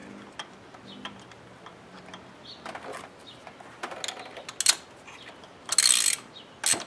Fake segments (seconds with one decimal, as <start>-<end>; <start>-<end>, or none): none